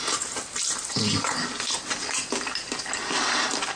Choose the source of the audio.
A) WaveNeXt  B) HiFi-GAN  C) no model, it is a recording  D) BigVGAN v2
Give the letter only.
C